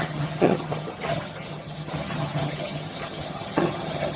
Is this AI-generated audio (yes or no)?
yes